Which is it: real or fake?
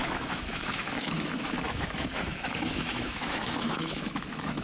fake